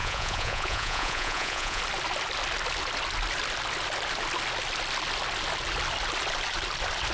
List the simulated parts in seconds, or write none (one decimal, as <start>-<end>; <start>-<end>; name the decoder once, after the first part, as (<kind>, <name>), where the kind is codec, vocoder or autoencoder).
0.0-1.8 (vocoder, Vocos)